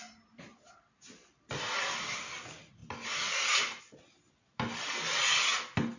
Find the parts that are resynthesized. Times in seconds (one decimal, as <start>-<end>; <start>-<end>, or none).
none